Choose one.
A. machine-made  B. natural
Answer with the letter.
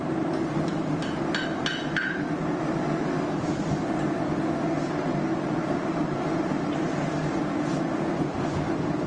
B